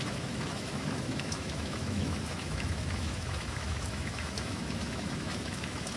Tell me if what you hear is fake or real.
fake